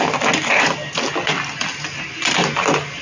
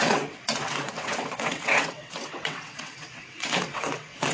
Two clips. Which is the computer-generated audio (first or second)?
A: second